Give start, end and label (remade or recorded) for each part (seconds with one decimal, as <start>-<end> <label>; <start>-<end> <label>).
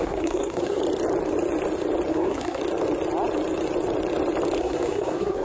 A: 0.0-0.8 remade; 0.8-2.1 recorded; 2.1-2.6 remade; 2.6-4.6 recorded; 4.6-5.4 remade